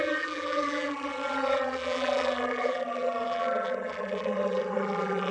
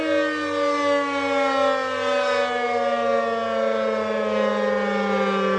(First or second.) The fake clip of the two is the first